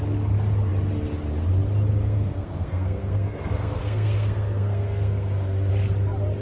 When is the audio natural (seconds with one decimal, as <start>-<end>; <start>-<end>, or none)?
0.0-1.9; 5.7-6.4